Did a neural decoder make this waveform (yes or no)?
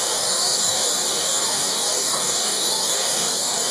yes